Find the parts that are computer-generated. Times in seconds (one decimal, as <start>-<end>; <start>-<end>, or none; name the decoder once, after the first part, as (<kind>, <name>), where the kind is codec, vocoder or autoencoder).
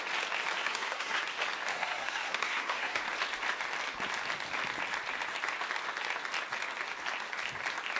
0.6-1.2 (codec, SNAC); 1.7-3.0